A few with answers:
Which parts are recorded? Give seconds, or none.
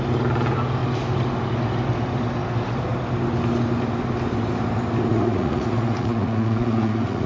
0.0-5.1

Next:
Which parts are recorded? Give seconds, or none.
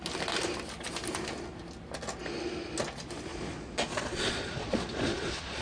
0.0-3.3